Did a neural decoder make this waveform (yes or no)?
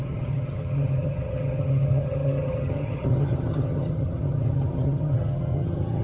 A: yes